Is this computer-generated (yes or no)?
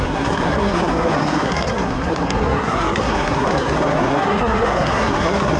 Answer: yes